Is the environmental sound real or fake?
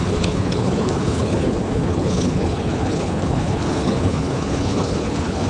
fake